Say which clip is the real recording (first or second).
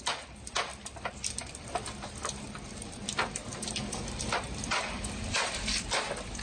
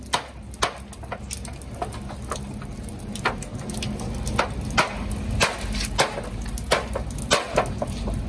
second